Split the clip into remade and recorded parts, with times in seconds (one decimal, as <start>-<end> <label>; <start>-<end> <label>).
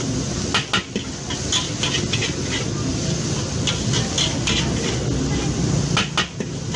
0.0-6.8 recorded